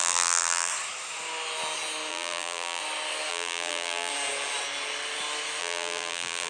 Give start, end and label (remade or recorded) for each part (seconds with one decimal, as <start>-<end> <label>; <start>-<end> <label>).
0.0-0.7 remade; 0.7-2.1 recorded; 2.1-2.8 remade; 2.8-3.3 recorded; 3.3-4.1 remade; 4.1-5.6 recorded; 5.6-6.5 remade